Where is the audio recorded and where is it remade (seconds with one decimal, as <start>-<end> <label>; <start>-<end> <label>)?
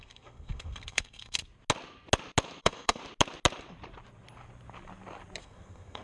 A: 0.0-1.4 remade; 1.4-2.6 recorded; 2.6-3.0 remade; 3.0-5.4 recorded; 5.4-6.0 remade